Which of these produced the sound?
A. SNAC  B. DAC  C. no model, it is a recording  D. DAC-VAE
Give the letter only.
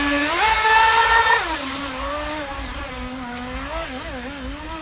C